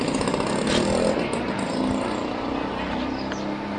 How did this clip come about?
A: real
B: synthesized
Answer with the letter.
A